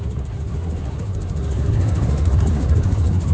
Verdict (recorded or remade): remade